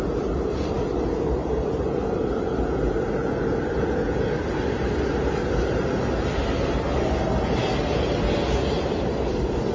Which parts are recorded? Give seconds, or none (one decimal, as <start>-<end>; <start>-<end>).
0.0-1.4; 2.0-9.7